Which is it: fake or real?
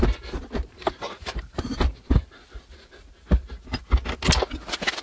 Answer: real